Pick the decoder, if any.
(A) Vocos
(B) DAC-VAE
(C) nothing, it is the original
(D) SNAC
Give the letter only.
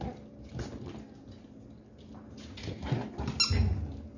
C